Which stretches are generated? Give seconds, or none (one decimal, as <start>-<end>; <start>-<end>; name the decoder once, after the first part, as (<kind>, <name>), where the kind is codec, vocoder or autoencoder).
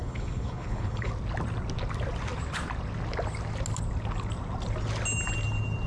0.0-1.1 (codec, HILCodec)